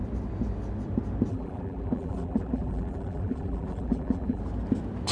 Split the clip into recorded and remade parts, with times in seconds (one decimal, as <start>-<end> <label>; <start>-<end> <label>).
0.0-1.3 recorded; 1.3-4.4 remade; 4.4-5.1 recorded